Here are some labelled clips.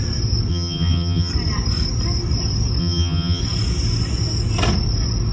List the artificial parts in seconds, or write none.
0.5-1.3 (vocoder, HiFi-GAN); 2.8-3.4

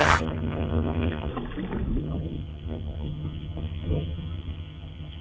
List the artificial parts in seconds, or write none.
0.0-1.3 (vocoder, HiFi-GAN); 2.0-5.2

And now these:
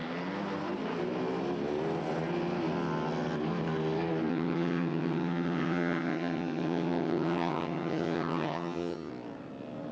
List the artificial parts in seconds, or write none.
4.3-9.1 (vocoder, HiFi-GAN)

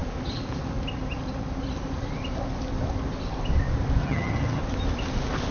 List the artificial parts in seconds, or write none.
4.0-4.6 (vocoder, HiFi-GAN)

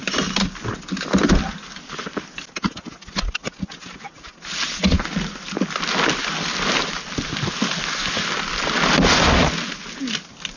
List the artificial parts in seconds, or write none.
none

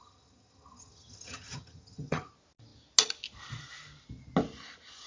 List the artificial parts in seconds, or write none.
0.0-2.3 (vocoder, HiFi-GAN)

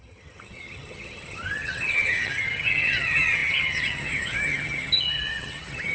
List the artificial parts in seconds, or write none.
0.0-5.9 (vocoder, HiFi-GAN)